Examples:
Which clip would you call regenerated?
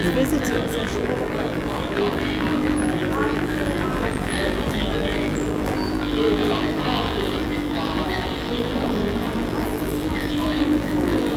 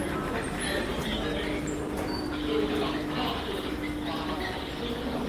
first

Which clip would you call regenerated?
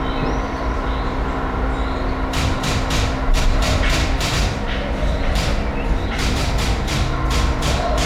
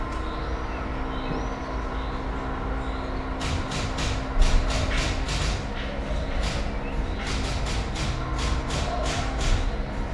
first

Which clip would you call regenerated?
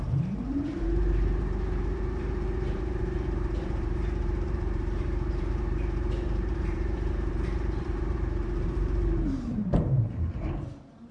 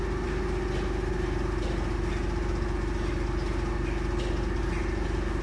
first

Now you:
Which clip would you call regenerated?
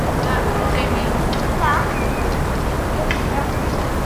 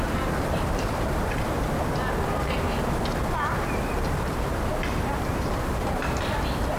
second